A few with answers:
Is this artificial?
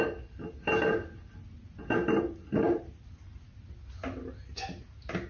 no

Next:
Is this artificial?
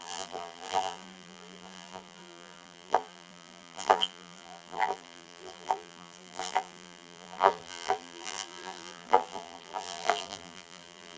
yes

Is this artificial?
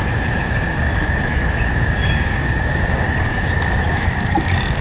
yes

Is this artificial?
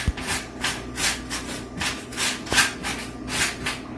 no